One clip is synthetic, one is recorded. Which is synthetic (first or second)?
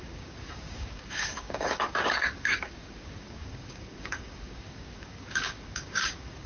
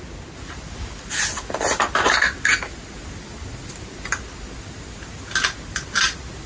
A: first